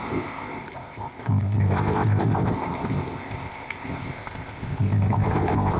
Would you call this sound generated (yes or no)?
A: yes